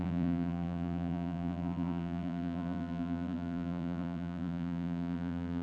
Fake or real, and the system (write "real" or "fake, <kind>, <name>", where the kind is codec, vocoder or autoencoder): fake, vocoder, BigVGAN v2